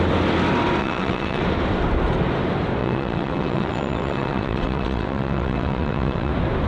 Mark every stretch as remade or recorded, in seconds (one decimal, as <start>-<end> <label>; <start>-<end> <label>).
0.0-0.8 recorded; 0.8-1.4 remade; 1.4-2.8 recorded; 2.8-6.3 remade; 6.3-6.7 recorded